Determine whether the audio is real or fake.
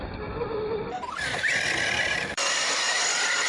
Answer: fake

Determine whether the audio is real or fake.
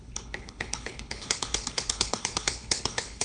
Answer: fake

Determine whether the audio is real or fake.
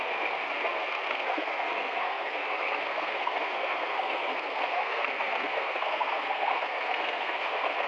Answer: fake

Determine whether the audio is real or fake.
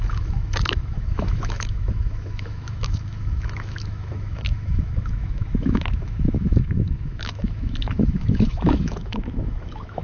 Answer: fake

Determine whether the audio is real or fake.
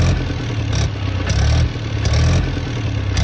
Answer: real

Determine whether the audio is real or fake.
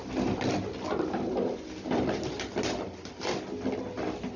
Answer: real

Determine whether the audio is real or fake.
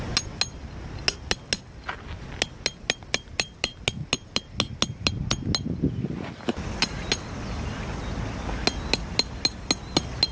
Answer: real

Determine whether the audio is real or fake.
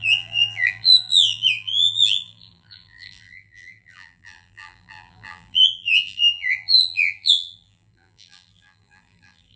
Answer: fake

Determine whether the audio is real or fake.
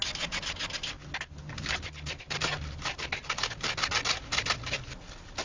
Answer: real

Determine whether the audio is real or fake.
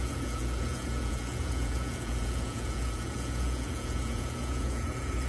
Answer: fake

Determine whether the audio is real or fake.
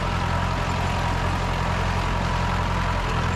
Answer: real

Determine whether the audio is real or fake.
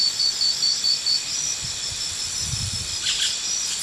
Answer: real